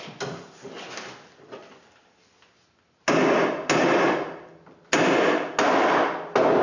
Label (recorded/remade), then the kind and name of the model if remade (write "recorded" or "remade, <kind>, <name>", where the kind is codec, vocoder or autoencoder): recorded